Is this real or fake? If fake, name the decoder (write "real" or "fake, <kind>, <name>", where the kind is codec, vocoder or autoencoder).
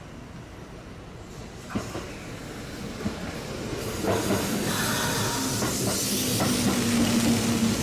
real